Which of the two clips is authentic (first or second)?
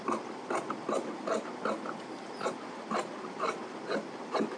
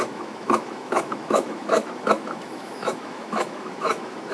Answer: first